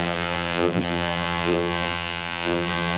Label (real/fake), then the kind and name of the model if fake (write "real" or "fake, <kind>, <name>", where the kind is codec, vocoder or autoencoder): fake, vocoder, BigVGAN v2